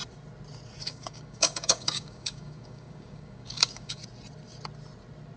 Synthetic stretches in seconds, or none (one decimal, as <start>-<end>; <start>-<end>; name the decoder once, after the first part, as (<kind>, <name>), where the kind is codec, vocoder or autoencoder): 0.8-4.0 (codec, DAC)